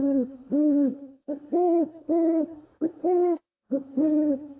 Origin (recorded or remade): remade